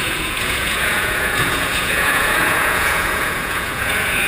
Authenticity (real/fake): fake